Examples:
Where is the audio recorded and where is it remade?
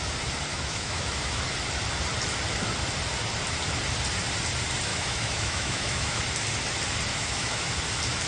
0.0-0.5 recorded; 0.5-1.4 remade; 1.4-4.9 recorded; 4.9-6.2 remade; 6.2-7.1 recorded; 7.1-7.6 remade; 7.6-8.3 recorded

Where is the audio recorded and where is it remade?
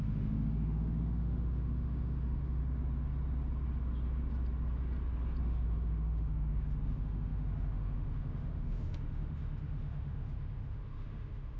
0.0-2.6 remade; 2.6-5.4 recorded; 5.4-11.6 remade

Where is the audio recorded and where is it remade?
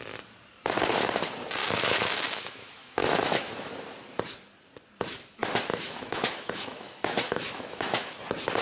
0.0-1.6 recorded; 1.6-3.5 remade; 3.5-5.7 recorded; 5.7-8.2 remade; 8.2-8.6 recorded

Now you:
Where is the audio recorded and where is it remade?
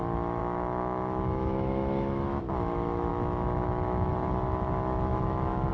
0.0-0.4 recorded; 0.4-2.5 remade; 2.5-3.1 recorded; 3.1-4.1 remade; 4.1-5.1 recorded; 5.1-5.7 remade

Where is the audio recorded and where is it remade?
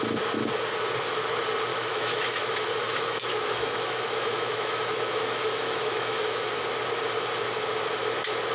0.0-1.7 recorded; 1.7-6.5 remade; 6.5-8.5 recorded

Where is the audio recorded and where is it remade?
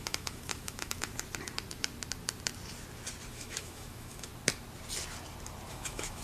0.0-1.1 remade; 1.1-3.3 recorded; 3.3-4.3 remade; 4.3-5.7 recorded; 5.7-6.2 remade